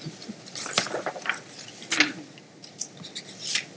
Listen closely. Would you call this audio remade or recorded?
recorded